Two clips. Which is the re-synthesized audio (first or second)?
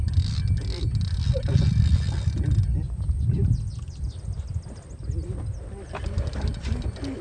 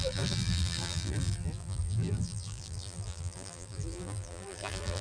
second